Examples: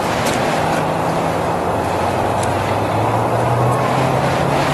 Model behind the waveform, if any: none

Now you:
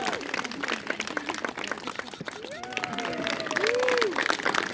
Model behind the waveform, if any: none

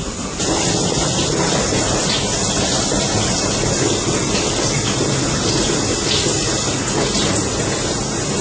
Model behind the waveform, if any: none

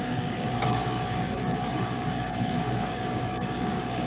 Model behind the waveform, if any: codec, DAC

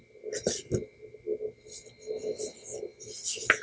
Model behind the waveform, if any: none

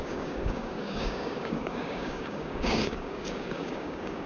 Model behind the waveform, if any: codec, DAC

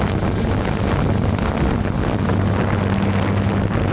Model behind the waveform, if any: none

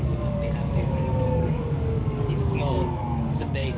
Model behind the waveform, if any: codec, DAC